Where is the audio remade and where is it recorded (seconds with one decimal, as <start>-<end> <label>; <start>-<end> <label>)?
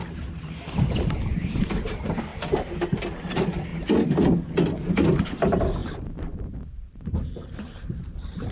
0.0-2.3 remade; 2.3-3.3 recorded; 3.3-3.7 remade; 3.7-4.9 recorded; 4.9-8.5 remade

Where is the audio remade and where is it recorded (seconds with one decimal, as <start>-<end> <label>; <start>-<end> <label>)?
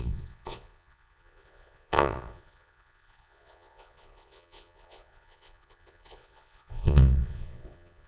0.0-8.1 remade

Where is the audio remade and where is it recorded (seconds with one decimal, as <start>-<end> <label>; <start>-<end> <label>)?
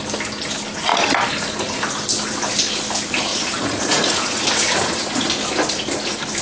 0.0-3.3 recorded; 3.3-5.3 remade; 5.3-6.4 recorded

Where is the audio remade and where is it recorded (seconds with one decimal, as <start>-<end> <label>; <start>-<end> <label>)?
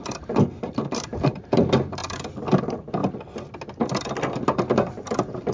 0.0-2.0 remade; 2.0-2.6 recorded; 2.6-3.0 remade; 3.0-4.4 recorded; 4.4-5.5 remade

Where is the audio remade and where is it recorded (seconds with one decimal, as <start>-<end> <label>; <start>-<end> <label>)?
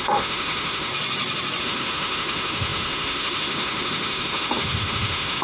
0.0-0.9 remade; 0.9-1.6 recorded; 1.6-5.4 remade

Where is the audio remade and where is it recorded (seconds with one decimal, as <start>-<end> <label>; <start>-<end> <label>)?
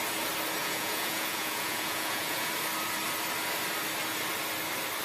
0.0-0.6 recorded; 0.6-2.5 remade; 2.5-5.0 recorded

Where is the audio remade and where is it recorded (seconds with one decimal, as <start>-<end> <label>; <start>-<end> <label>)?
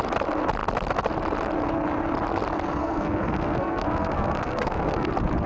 0.0-2.8 recorded; 2.8-5.1 remade; 5.1-5.5 recorded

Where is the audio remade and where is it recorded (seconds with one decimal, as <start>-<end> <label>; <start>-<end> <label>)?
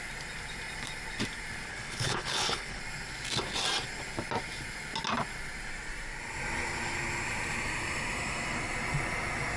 0.0-1.7 recorded; 1.7-2.8 remade; 2.8-9.6 recorded